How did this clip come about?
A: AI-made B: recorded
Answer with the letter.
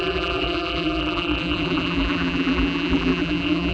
A